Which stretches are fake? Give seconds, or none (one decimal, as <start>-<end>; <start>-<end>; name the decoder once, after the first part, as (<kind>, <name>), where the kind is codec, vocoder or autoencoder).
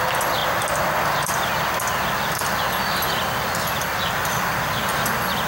none